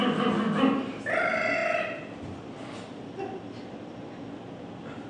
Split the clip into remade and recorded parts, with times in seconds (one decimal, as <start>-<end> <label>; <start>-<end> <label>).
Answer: 0.0-5.1 recorded